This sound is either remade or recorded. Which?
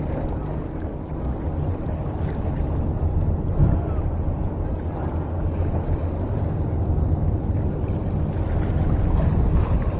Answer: recorded